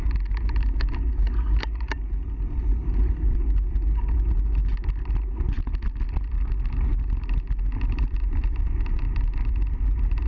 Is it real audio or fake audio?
real